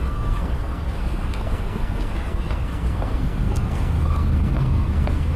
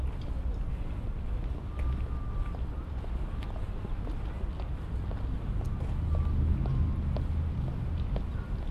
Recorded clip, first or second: second